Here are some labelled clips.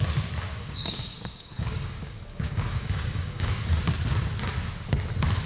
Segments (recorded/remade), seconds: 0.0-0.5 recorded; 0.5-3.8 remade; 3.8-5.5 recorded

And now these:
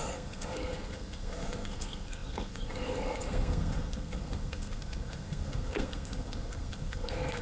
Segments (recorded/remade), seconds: 0.0-7.4 remade

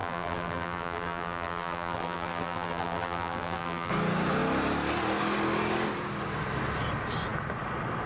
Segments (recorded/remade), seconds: 0.0-3.9 remade; 3.9-8.1 recorded

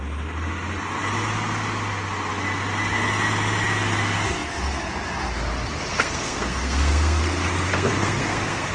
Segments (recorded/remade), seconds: 0.0-5.9 recorded; 5.9-7.2 remade; 7.2-7.7 recorded; 7.7-8.7 remade

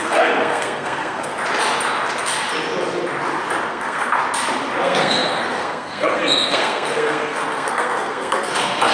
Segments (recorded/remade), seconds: 0.0-1.3 remade; 1.3-3.7 recorded; 3.7-4.2 remade; 4.2-4.8 recorded; 4.8-8.9 remade

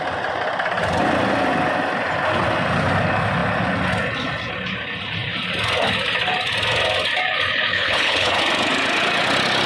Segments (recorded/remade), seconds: 0.0-7.7 recorded; 7.7-8.4 remade; 8.4-9.7 recorded

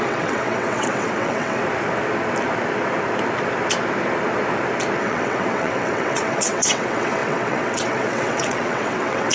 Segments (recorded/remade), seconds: 0.0-1.6 remade; 1.6-5.0 recorded; 5.0-9.3 remade

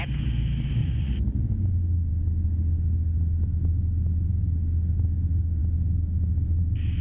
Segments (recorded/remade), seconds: 0.0-0.8 recorded; 0.8-1.5 remade; 1.5-7.0 recorded